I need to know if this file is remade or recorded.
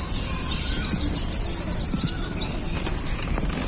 recorded